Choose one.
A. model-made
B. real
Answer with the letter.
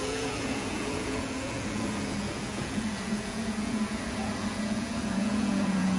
A